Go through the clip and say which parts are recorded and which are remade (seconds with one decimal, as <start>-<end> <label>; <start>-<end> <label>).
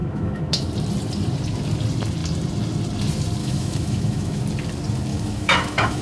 0.0-0.7 remade; 0.7-3.4 recorded; 3.4-4.4 remade; 4.4-5.1 recorded; 5.1-6.0 remade